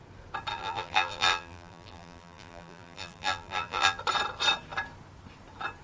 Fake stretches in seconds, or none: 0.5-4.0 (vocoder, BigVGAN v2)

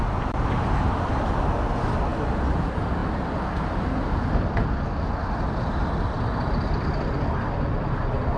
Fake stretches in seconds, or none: none